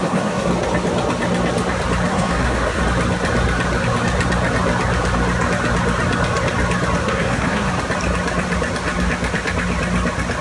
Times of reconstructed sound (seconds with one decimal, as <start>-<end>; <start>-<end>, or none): 0.0-0.5; 2.1-2.8; 7.0-7.7